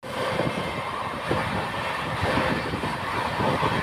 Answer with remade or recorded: recorded